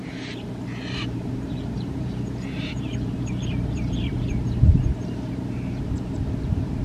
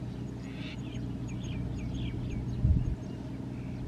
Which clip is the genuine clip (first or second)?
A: second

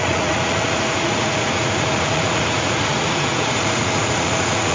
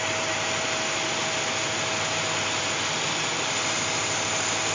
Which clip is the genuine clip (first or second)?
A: second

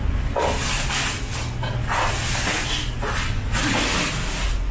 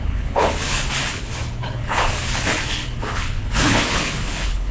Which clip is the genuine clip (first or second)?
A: first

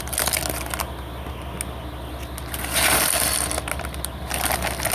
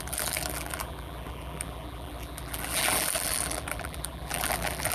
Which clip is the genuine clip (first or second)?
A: first